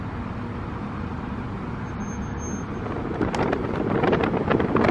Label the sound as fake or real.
real